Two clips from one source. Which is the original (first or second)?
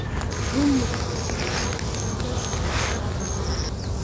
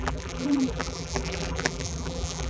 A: first